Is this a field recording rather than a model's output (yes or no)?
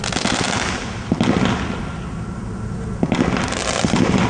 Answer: yes